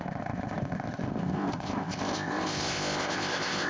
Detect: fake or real fake